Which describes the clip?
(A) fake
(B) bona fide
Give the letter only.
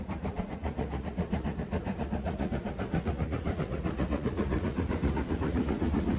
A